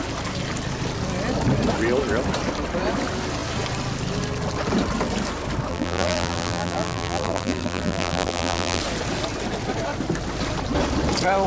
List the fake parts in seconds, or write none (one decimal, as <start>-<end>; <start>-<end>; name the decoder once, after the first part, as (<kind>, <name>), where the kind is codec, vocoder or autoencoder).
5.7-8.8 (vocoder, BigVGAN v2)